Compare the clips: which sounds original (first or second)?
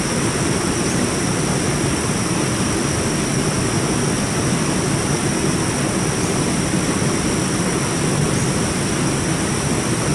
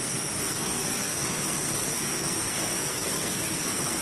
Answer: first